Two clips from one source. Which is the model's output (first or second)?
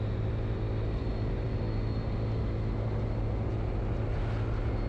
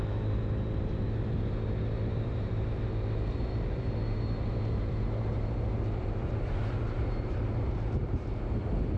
second